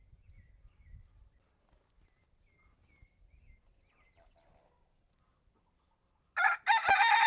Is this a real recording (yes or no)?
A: yes